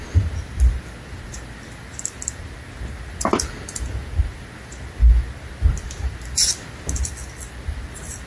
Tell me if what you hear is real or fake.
real